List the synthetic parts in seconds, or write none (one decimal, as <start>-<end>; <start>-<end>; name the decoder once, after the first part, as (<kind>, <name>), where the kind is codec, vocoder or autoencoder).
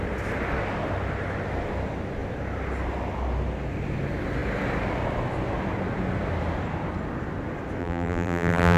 7.8-8.8 (vocoder, BigVGAN v2)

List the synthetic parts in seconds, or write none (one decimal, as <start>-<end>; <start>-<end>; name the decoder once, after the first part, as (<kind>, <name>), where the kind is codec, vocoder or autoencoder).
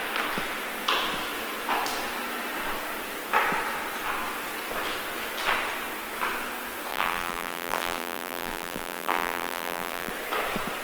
6.9-10.1 (vocoder, BigVGAN v2)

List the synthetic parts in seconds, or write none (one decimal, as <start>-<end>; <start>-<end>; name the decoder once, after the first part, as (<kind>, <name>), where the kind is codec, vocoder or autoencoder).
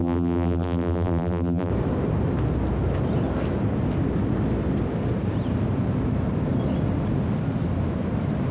0.0-1.7 (vocoder, BigVGAN v2)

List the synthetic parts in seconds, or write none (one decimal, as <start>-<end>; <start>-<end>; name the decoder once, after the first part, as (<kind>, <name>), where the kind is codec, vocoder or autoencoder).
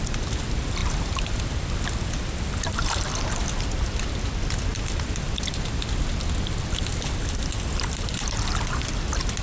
none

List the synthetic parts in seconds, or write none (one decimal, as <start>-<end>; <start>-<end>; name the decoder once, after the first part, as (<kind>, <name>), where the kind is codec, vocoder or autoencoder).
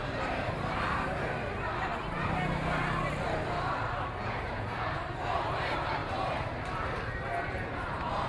0.0-8.3 (vocoder, BigVGAN v2)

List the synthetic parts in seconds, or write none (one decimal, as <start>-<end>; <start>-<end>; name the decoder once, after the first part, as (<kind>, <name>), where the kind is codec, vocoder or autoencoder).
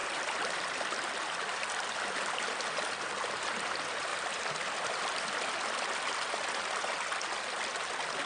0.0-2.4 (vocoder, BigVGAN v2); 4.1-5.1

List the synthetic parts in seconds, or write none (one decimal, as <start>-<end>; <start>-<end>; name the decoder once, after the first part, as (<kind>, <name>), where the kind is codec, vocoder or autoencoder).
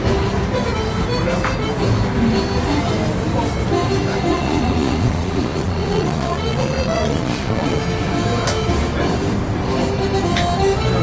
4.3-7.8 (vocoder, Vocos)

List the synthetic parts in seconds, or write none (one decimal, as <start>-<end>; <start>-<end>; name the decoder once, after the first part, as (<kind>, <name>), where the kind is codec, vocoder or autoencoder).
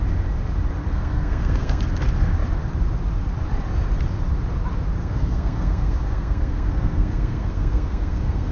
0.8-1.8 (codec, SNAC); 5.0-8.5